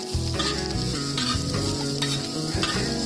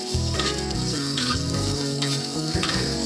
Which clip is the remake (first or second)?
second